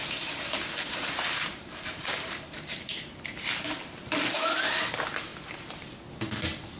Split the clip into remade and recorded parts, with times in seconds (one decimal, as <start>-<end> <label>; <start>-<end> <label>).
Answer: 0.0-4.1 remade; 4.1-6.8 recorded